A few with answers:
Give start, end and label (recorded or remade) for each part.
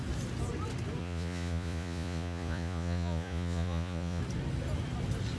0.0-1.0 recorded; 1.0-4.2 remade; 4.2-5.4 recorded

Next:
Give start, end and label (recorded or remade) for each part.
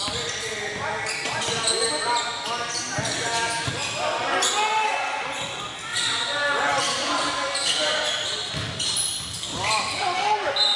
0.0-10.8 recorded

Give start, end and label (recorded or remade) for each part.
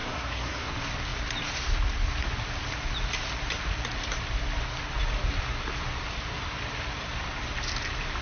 0.0-0.7 remade; 0.7-8.2 recorded